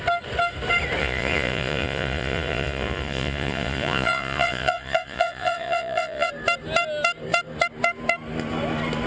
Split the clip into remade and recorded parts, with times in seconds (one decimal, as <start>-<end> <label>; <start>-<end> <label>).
0.0-1.0 recorded; 1.0-6.3 remade; 6.3-9.1 recorded